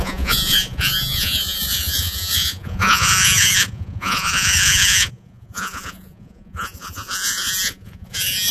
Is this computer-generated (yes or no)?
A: yes